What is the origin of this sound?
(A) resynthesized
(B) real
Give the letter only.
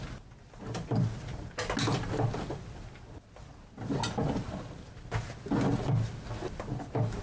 B